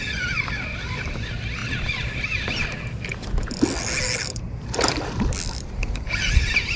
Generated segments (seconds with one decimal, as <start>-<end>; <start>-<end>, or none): none